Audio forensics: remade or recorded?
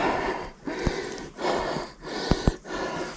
recorded